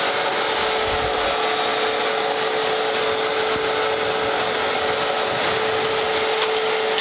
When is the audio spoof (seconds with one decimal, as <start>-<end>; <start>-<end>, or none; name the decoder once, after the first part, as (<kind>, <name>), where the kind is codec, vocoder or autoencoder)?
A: none